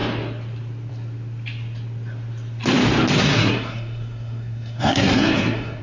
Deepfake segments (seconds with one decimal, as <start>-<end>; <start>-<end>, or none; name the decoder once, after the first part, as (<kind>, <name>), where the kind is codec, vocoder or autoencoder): 3.2-5.8 (codec, SNAC)